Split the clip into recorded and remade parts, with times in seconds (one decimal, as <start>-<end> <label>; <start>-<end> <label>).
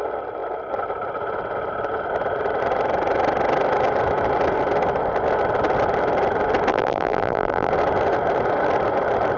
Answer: 0.0-6.7 recorded; 6.7-7.7 remade; 7.7-9.4 recorded